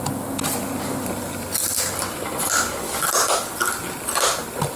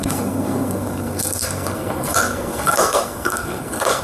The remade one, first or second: second